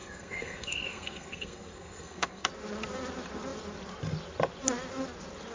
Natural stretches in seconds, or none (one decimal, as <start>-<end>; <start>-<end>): 2.5-5.5